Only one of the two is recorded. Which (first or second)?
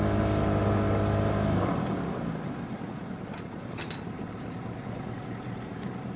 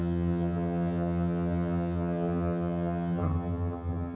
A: first